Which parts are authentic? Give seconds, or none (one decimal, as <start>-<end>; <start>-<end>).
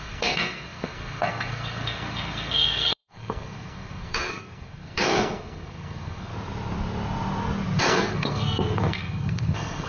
6.3-7.8